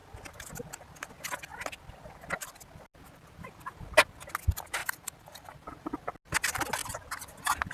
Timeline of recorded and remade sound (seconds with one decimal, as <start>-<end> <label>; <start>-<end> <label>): 0.0-4.8 recorded; 4.8-5.9 remade; 5.9-7.7 recorded